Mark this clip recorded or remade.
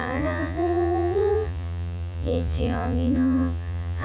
remade